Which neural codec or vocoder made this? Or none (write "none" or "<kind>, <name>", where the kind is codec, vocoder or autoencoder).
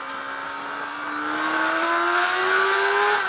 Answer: none